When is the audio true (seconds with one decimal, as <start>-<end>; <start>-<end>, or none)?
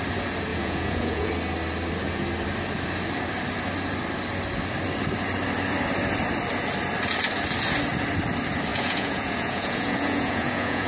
0.0-0.5; 1.3-8.7